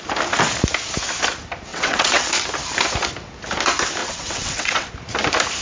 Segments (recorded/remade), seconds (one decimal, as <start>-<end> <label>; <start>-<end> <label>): 0.0-1.7 recorded; 1.7-2.3 remade; 2.3-4.0 recorded; 4.0-4.9 remade; 4.9-5.6 recorded